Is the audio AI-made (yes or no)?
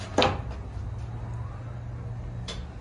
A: no